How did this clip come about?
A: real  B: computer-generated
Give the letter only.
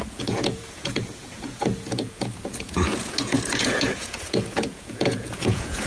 B